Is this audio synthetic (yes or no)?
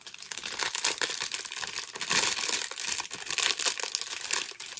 no